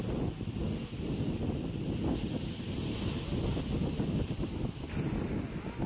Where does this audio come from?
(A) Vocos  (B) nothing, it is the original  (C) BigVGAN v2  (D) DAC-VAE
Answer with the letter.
B